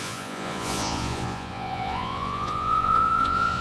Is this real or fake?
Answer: fake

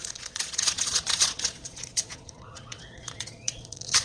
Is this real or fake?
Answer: fake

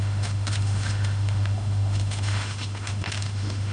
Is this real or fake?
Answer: fake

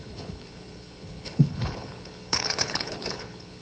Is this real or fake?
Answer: fake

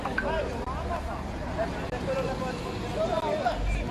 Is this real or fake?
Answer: fake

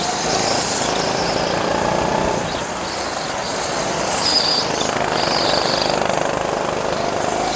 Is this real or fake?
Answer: real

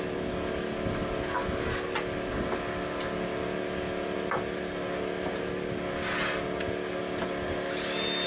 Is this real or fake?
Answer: real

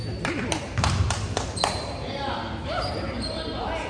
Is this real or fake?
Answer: fake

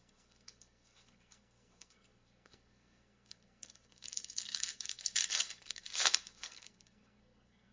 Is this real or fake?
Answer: fake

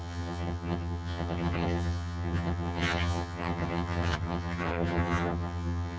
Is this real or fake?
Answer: fake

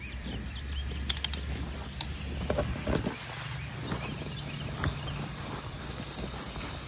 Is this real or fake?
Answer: real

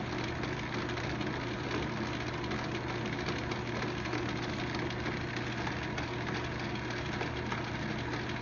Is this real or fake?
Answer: real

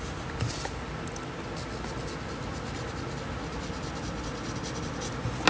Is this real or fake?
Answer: real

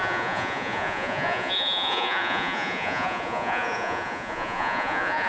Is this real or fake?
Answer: fake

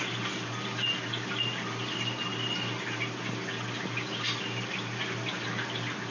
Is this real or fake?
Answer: real